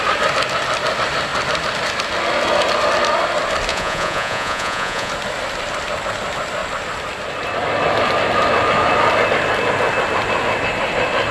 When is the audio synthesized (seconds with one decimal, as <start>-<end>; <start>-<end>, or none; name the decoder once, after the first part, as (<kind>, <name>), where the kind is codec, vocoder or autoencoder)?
3.7-5.1 (vocoder, Vocos)